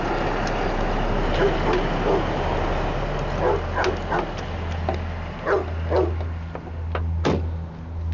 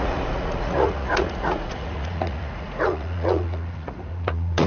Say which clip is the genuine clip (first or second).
first